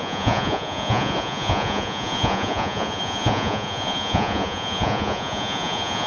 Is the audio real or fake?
fake